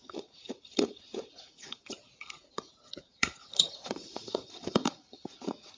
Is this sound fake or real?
fake